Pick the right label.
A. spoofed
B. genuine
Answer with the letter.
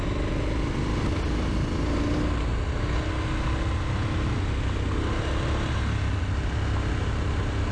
B